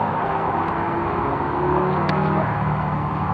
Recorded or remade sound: remade